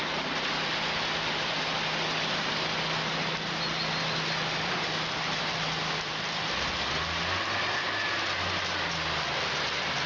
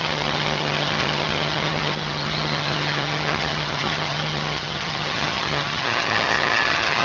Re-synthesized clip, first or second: second